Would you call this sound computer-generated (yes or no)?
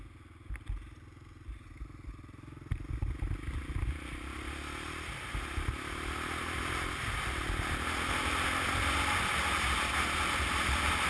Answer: no